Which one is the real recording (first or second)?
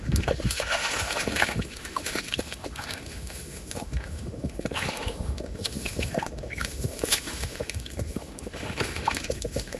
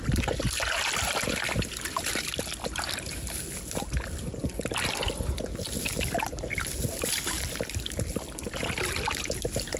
second